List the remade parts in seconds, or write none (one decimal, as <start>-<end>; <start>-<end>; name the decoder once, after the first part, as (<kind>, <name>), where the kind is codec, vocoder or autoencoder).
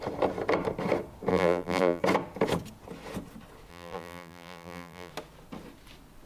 1.3-2.0 (vocoder, BigVGAN v2); 3.7-5.1